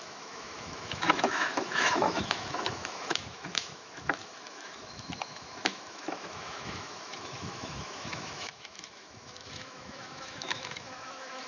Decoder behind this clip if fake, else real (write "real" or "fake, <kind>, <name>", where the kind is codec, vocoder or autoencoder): fake, autoencoder, DAC-VAE